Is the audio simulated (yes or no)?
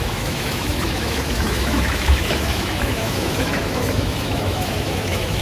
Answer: yes